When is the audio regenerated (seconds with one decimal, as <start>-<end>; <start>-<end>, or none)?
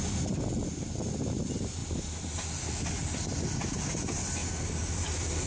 none